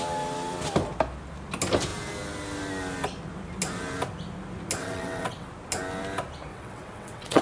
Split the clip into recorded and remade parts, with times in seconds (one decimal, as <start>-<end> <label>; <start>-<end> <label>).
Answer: 0.0-4.8 recorded; 4.8-5.5 remade; 5.5-6.5 recorded; 6.5-7.4 remade